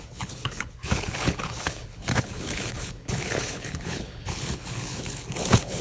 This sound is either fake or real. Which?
fake